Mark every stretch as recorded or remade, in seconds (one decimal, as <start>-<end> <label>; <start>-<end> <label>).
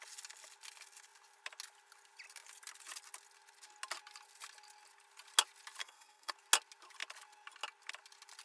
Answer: 0.0-5.8 recorded; 5.8-6.3 remade; 6.3-8.4 recorded